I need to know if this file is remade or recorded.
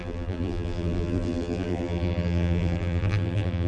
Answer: remade